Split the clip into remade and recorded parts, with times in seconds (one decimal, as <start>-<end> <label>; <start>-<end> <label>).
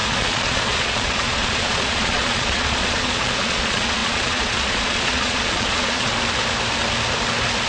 0.0-6.1 remade; 6.1-7.7 recorded